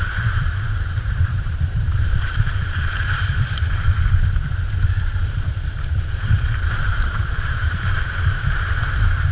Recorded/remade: remade